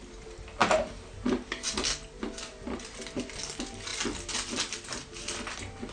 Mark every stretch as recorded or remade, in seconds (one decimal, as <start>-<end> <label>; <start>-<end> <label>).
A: 0.0-5.9 recorded